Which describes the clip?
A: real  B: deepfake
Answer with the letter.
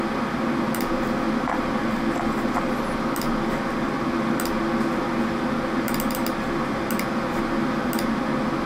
A